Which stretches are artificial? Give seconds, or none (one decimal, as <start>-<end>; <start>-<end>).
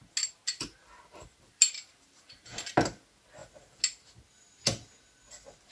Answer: none